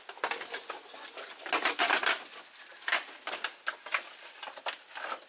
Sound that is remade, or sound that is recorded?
recorded